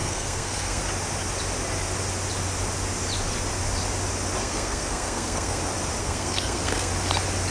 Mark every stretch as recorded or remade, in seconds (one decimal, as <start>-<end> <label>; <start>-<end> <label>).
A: 0.0-0.8 remade; 0.8-4.4 recorded; 4.4-5.6 remade; 5.6-6.0 recorded; 6.0-6.9 remade; 6.9-7.5 recorded